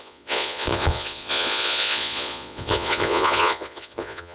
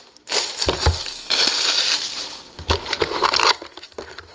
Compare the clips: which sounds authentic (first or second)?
second